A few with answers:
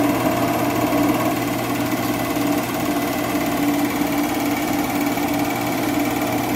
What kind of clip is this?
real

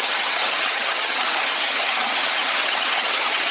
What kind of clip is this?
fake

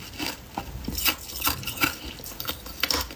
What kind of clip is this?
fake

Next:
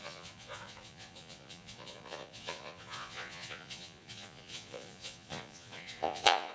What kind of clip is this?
fake